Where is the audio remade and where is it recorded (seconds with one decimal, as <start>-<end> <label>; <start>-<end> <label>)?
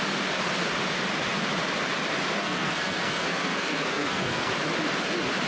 0.0-2.4 recorded; 2.4-4.5 remade; 4.5-5.5 recorded